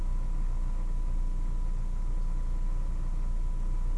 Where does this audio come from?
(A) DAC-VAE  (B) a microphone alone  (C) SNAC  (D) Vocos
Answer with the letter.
B